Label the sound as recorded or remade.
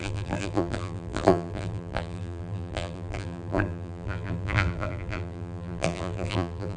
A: remade